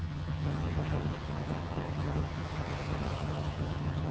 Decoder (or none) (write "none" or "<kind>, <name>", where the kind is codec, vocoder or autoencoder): vocoder, HiFi-GAN